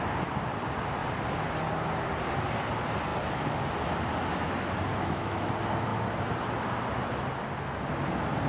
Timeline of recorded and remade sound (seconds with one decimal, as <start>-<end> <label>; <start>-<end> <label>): 0.0-4.9 recorded; 4.9-5.5 remade; 5.5-8.5 recorded